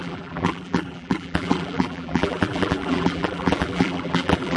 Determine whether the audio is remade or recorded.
remade